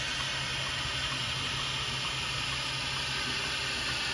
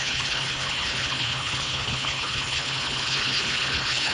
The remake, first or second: second